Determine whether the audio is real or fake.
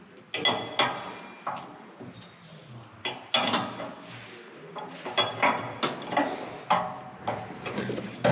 real